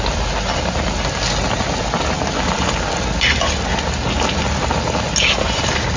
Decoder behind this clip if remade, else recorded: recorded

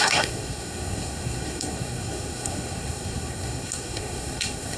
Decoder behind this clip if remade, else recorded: remade, codec, SNAC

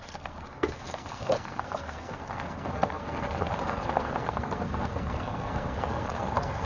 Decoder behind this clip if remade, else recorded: remade, codec, SNAC